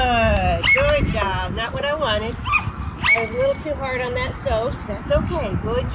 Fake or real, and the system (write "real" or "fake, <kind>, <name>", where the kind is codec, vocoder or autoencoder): real